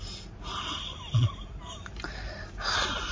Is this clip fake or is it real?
real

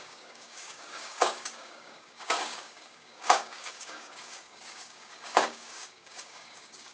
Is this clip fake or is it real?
fake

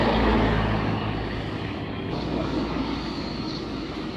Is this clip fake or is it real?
fake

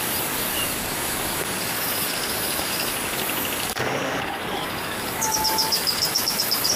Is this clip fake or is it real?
fake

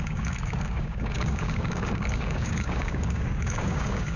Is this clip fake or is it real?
fake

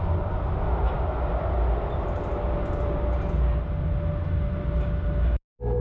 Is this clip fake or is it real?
real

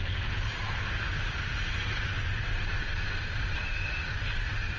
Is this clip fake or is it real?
real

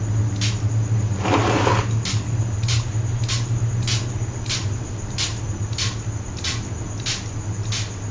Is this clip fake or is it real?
real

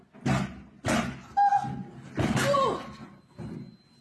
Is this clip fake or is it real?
real